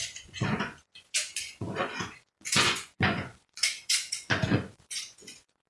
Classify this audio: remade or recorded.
remade